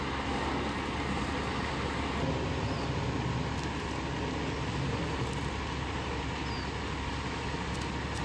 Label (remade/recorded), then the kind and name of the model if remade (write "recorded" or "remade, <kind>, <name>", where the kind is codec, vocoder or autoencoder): recorded